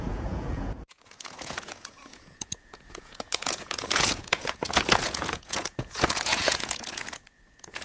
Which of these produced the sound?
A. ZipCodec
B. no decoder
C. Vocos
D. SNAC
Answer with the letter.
C